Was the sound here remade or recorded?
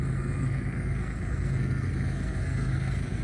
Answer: remade